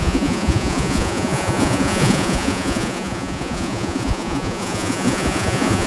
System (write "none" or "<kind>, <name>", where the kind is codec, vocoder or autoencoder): vocoder, Vocos